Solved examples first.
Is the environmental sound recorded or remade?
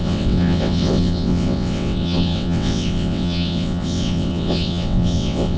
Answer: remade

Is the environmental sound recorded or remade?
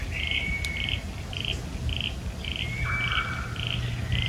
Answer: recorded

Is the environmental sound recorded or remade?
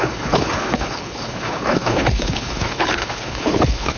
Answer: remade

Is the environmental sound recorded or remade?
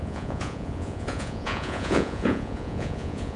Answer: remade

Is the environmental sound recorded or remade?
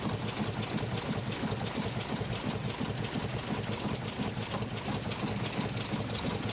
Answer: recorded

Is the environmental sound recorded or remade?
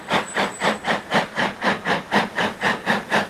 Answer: remade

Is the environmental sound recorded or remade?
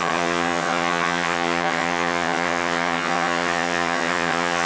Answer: remade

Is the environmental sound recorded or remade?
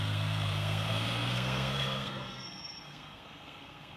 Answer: remade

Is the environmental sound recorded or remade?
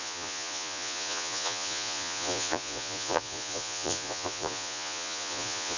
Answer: remade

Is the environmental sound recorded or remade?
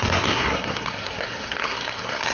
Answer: remade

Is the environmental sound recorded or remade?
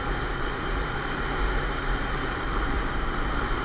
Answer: remade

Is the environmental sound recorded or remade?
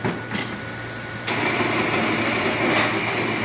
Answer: recorded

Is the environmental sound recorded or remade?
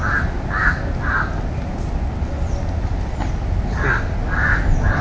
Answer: recorded